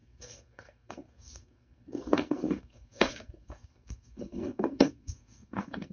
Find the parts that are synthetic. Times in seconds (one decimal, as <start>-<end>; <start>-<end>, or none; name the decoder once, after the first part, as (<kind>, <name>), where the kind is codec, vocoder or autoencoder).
0.0-5.9 (codec, SNAC)